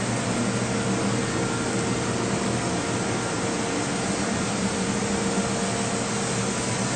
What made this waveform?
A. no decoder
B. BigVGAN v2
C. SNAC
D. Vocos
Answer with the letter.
A